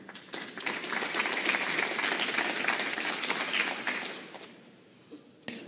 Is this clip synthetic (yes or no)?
no